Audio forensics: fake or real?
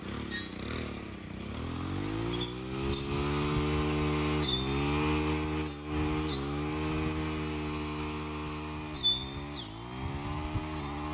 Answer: real